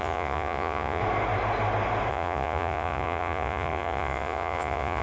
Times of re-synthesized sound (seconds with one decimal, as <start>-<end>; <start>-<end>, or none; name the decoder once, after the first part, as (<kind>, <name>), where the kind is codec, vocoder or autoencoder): 0.0-1.0 (vocoder, Vocos); 2.1-5.0